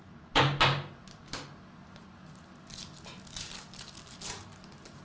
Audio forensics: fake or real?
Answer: real